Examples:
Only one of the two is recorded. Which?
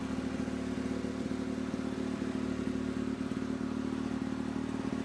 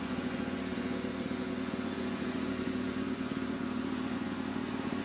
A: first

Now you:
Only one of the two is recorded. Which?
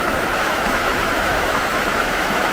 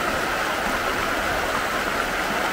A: second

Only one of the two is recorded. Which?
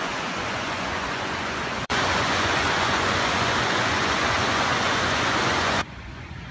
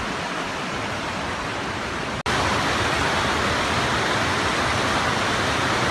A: second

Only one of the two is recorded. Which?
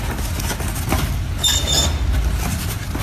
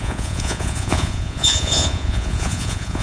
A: first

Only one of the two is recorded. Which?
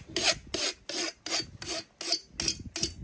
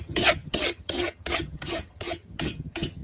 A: first